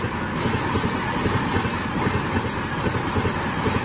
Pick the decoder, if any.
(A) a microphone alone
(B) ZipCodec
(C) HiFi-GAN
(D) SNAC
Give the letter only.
A